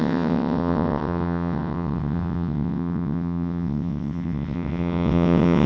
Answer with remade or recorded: remade